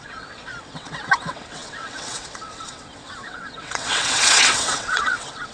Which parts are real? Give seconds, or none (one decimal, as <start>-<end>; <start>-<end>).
none